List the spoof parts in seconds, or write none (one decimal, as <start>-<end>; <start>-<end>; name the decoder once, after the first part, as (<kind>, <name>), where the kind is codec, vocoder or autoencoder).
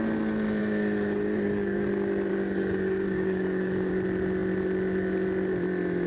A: 0.6-1.9 (codec, DAC); 2.3-3.9